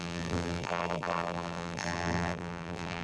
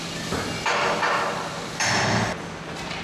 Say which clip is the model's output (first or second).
first